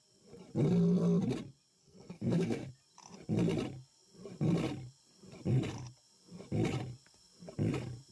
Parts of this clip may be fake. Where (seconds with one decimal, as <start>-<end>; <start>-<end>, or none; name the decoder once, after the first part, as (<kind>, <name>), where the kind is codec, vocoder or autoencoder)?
1.8-2.7 (codec, SNAC)